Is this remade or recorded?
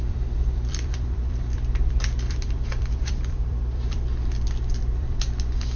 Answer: remade